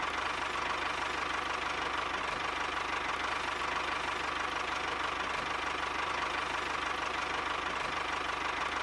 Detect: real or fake real